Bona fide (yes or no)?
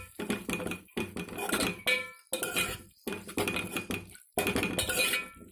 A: yes